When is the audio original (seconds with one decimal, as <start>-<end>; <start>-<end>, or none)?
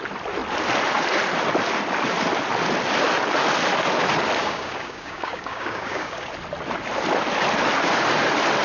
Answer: 0.0-4.4; 6.3-8.6